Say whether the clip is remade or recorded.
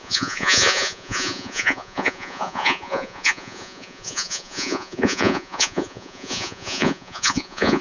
remade